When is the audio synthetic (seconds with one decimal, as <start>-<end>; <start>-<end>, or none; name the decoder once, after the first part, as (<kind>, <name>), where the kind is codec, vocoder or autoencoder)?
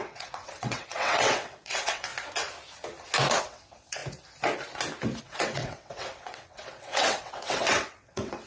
0.0-2.1 (vocoder, WaveNeXt); 3.4-4.0; 5.2-8.5